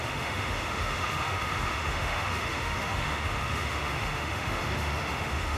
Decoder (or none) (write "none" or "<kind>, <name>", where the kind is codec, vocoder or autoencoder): autoencoder, DAC-VAE